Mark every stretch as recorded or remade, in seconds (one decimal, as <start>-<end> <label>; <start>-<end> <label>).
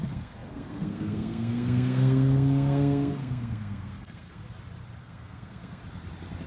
0.0-4.4 remade; 4.4-5.0 recorded; 5.0-5.8 remade; 5.8-6.5 recorded